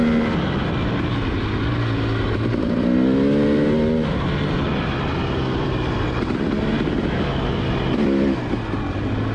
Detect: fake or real real